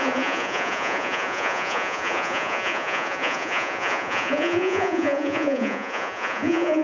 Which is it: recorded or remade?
remade